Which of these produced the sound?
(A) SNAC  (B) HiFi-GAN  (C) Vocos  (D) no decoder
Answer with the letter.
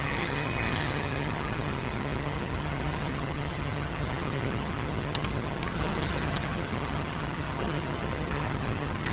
B